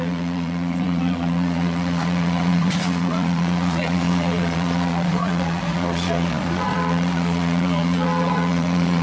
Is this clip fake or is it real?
fake